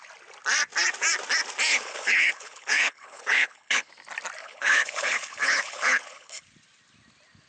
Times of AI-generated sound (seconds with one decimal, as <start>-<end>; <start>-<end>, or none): 1.7-3.9; 4.4-6.4